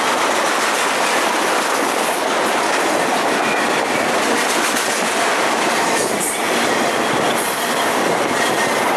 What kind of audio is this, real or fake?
fake